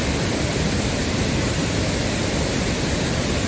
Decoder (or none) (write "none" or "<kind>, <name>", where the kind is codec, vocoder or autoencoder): none